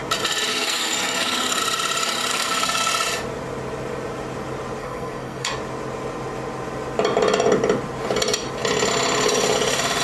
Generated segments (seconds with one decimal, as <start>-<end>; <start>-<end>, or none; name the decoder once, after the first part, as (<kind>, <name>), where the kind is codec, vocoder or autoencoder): 0.5-1.6 (codec, SNAC); 2.3-2.9; 4.8-5.5